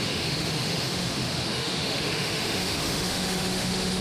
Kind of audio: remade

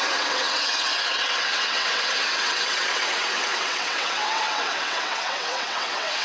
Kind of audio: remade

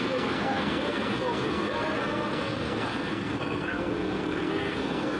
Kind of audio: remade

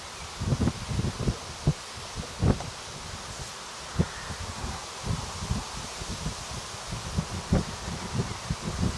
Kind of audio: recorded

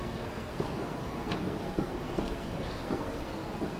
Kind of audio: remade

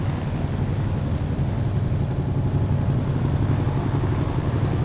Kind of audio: recorded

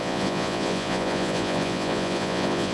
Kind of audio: remade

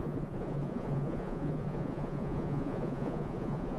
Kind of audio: remade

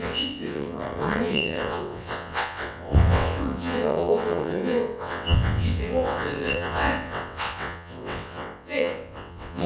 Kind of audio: remade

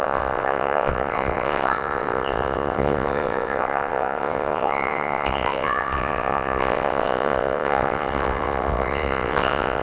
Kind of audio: remade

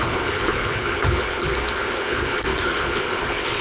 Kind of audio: remade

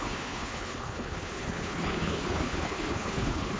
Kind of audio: remade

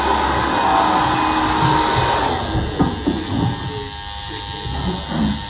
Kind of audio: recorded